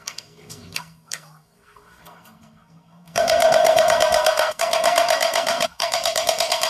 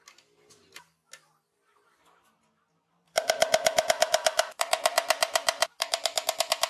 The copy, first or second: first